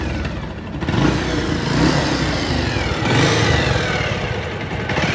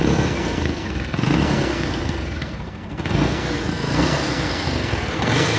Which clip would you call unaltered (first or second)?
first